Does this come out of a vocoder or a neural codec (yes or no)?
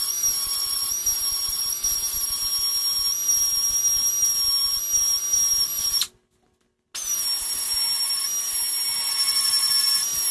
no